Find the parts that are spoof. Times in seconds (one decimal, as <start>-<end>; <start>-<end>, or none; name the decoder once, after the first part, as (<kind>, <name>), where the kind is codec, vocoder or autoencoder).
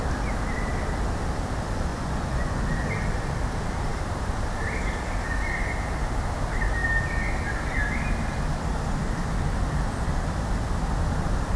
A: 1.9-2.6 (vocoder, Vocos)